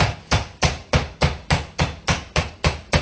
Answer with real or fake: real